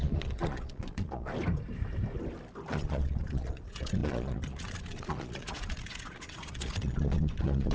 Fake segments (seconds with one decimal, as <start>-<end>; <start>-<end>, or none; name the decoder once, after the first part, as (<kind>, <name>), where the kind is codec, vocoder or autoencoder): 0.0-1.3 (vocoder, Vocos); 2.7-7.7